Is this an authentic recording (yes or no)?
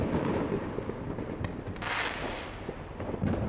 yes